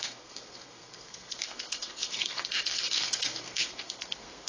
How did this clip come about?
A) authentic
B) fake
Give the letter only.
B